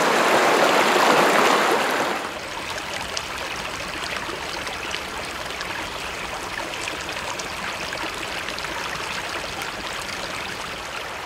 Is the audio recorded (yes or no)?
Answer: yes